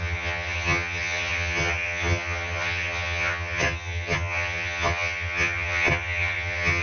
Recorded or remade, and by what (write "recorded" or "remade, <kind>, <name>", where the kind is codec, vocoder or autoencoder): remade, vocoder, HiFi-GAN